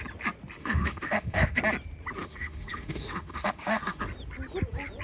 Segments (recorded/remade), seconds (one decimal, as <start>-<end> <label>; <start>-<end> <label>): 0.0-0.6 recorded; 0.6-1.6 remade; 1.6-2.2 recorded; 2.2-4.0 remade; 4.0-5.0 recorded

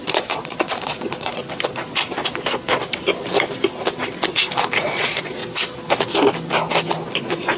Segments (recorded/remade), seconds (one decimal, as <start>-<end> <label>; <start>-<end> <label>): 0.0-1.4 remade; 1.4-4.8 recorded; 4.8-5.4 remade; 5.4-7.1 recorded; 7.1-7.6 remade